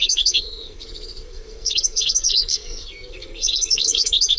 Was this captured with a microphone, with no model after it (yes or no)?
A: no